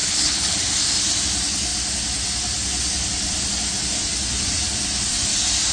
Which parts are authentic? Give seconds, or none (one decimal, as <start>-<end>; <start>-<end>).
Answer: 0.6-5.7